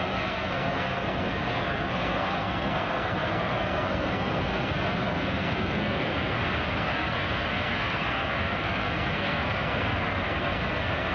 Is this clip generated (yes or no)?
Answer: yes